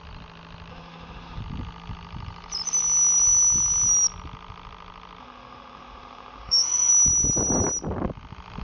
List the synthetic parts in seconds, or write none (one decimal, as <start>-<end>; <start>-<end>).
0.7-1.4; 5.2-6.9